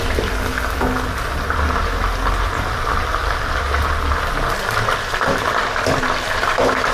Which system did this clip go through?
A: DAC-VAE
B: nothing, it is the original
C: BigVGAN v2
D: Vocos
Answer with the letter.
B